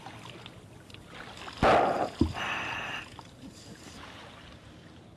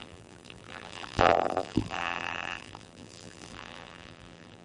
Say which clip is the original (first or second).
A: first